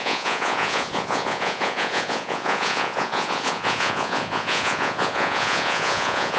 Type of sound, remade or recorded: remade